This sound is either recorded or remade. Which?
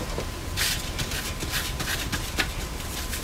remade